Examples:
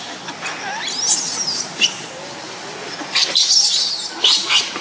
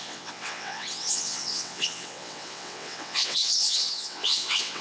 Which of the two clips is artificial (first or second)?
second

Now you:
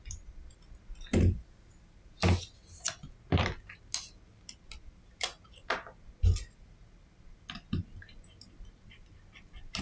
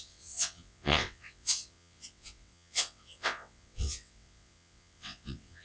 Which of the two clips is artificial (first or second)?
second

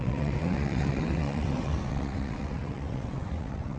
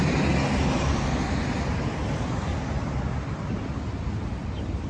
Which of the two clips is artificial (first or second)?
first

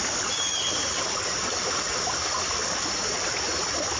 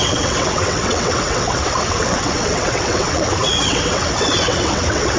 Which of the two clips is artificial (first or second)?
second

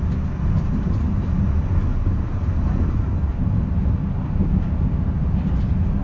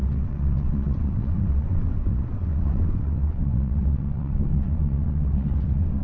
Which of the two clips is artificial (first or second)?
second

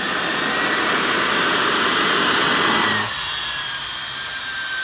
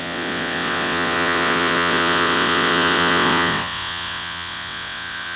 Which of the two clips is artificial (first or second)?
second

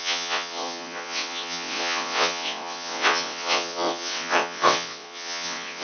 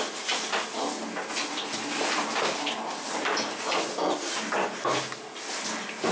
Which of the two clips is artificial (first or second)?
first